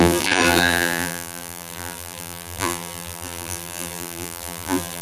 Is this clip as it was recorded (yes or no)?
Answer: no